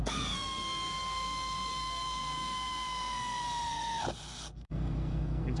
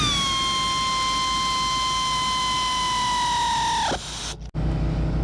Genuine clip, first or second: second